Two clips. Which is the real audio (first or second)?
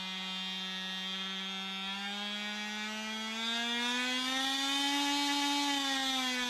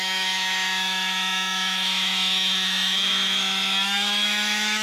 first